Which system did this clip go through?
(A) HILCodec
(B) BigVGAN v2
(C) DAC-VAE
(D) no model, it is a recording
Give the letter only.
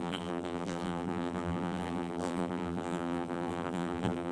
B